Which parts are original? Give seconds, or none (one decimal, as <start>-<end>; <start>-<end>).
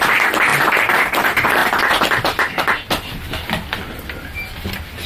0.0-5.1